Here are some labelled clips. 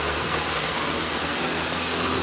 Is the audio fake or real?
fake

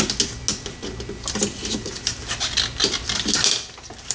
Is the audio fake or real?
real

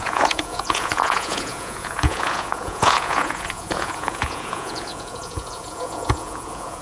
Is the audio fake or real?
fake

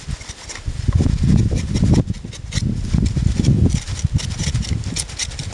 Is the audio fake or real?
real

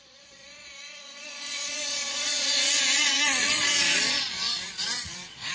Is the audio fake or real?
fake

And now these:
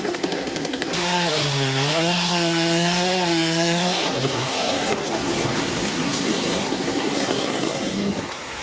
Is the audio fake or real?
fake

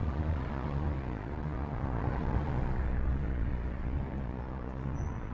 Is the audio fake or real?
fake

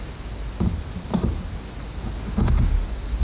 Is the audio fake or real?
real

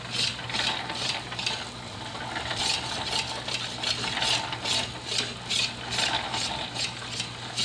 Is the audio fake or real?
real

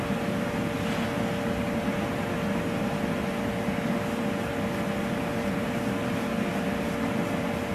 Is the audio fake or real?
real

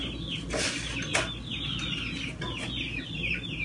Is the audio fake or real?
real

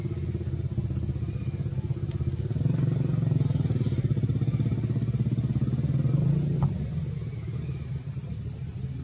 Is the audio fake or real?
real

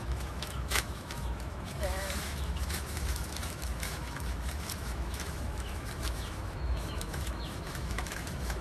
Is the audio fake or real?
fake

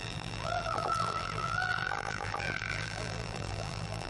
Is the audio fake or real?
fake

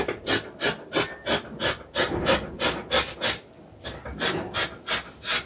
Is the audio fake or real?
real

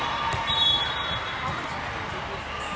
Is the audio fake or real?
real